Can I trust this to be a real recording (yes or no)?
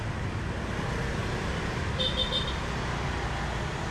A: yes